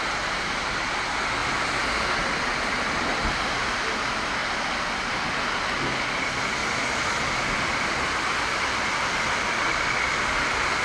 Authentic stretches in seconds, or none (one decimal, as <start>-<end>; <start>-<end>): 0.0-10.8